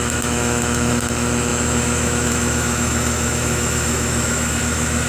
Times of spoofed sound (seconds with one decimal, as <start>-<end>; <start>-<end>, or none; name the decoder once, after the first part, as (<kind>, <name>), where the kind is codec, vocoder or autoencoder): 0.0-5.1 (autoencoder, DAC-VAE)